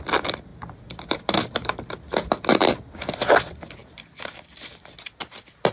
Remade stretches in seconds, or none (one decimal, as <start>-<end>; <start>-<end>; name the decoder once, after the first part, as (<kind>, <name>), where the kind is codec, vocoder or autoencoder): none

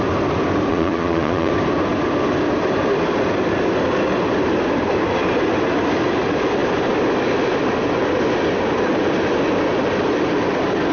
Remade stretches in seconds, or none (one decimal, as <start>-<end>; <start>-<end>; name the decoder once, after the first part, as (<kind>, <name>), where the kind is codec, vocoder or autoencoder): 0.7-1.5 (vocoder, Vocos)

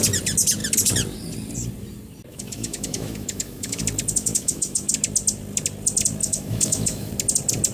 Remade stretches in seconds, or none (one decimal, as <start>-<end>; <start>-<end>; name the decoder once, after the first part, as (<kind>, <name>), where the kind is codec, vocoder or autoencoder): 2.3-3.8 (autoencoder, DAC-VAE); 4.2-4.9; 6.2-7.1

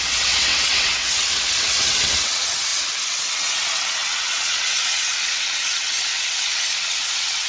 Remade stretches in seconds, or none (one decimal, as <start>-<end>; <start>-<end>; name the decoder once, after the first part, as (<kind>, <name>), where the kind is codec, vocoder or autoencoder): 0.0-7.5 (vocoder, WaveNeXt)

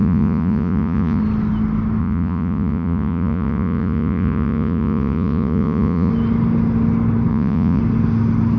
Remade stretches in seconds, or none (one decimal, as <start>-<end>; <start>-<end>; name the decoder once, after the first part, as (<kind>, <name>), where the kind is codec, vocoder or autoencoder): 0.0-1.2 (vocoder, Vocos); 2.0-6.1; 7.3-7.8